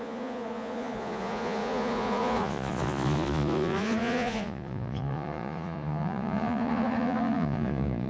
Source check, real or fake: fake